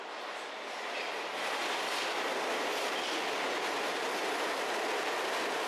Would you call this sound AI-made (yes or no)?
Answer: no